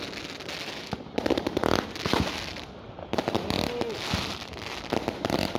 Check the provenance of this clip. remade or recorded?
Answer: recorded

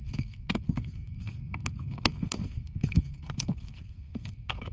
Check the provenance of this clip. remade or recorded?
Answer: remade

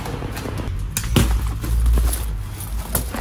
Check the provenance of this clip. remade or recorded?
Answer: recorded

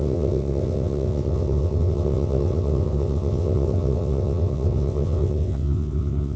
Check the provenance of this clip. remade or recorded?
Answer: remade